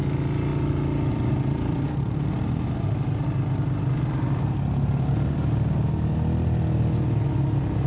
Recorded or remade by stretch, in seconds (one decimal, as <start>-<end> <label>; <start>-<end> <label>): 0.0-0.5 recorded; 0.5-2.3 remade; 2.3-7.9 recorded